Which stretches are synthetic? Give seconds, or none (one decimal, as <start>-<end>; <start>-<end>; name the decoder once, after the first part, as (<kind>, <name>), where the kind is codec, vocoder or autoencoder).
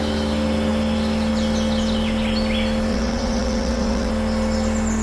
2.9-4.1 (vocoder, WaveNeXt)